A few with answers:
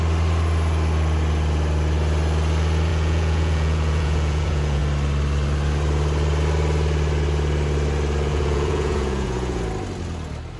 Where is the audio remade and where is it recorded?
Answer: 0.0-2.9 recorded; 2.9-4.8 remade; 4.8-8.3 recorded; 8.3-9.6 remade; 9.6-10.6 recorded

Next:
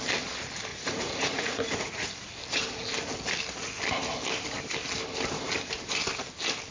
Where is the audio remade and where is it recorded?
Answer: 0.0-0.7 recorded; 0.7-2.1 remade; 2.1-6.7 recorded

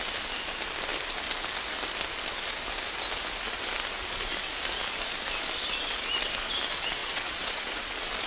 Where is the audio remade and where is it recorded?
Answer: 0.0-7.0 recorded; 7.0-7.9 remade; 7.9-8.3 recorded

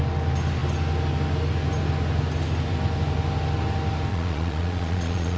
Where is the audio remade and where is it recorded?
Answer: 0.0-4.1 recorded; 4.1-5.4 remade

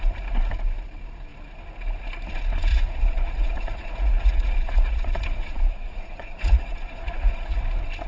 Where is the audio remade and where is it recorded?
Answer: 0.0-2.7 recorded; 2.7-7.6 remade; 7.6-8.1 recorded